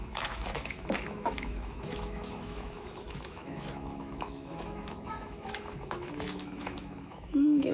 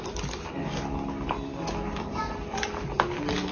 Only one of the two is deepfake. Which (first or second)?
first